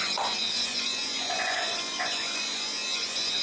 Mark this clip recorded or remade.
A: remade